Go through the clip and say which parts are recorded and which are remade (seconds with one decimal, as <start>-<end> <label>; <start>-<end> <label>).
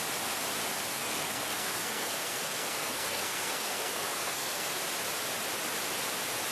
0.0-0.9 recorded; 0.9-4.8 remade; 4.8-6.5 recorded